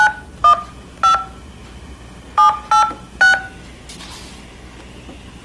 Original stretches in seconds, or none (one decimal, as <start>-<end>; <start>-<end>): 0.0-5.4